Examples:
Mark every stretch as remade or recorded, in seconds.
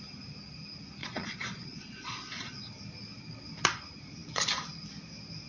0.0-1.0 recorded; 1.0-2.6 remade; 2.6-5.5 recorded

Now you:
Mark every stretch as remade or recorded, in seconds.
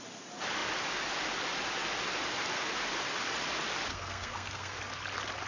0.0-3.9 recorded; 3.9-4.8 remade; 4.8-5.5 recorded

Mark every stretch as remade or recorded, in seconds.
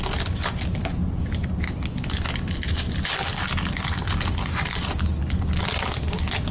0.0-6.5 recorded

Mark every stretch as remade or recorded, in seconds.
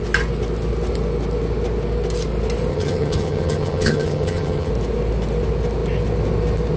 0.0-2.7 recorded; 2.7-4.7 remade; 4.7-6.8 recorded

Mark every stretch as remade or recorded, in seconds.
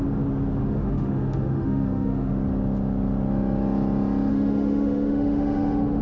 0.0-0.6 recorded; 0.6-2.3 remade; 2.3-4.3 recorded; 4.3-6.0 remade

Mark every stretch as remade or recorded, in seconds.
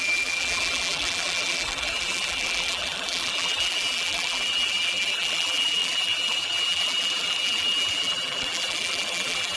0.0-9.6 remade